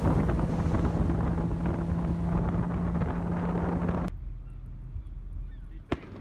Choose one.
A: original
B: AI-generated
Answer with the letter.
A